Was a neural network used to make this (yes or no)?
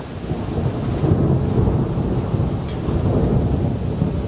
no